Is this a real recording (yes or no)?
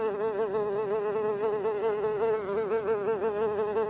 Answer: yes